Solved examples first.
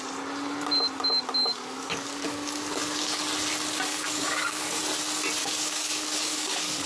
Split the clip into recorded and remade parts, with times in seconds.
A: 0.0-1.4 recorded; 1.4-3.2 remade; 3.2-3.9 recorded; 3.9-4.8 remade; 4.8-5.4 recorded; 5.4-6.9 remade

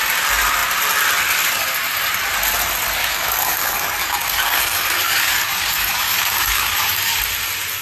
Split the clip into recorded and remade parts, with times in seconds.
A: 0.0-3.0 recorded; 3.0-7.2 remade; 7.2-7.8 recorded

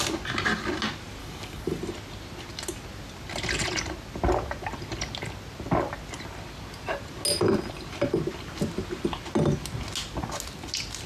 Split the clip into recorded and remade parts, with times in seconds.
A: 0.0-1.2 recorded; 1.2-1.8 remade; 1.8-11.1 recorded

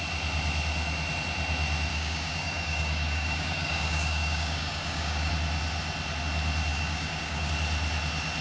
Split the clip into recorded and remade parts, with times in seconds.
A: 0.0-1.9 recorded; 1.9-5.3 remade; 5.3-6.7 recorded; 6.7-7.5 remade; 7.5-8.4 recorded

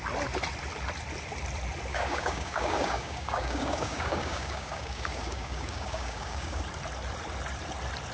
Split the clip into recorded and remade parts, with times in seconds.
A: 0.0-1.9 recorded; 1.9-6.6 remade; 6.6-8.1 recorded

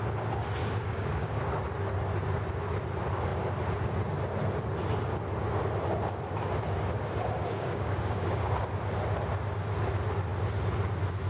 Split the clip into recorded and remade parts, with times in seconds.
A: 0.0-0.6 recorded; 0.6-1.4 remade; 1.4-7.4 recorded; 7.4-8.6 remade; 8.6-11.3 recorded

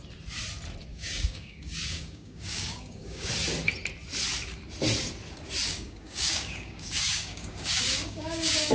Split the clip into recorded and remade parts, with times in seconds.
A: 0.0-0.9 recorded; 0.9-3.3 remade; 3.3-5.7 recorded; 5.7-8.7 remade